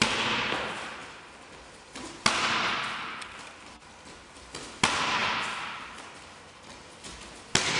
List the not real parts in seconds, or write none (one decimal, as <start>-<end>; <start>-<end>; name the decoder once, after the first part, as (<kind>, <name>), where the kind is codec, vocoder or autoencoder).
none